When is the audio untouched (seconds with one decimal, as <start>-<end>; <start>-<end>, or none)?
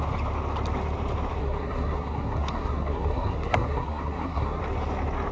0.0-1.4; 4.6-5.3